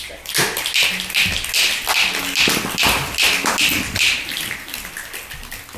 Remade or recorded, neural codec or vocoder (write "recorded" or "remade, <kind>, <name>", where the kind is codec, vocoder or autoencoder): recorded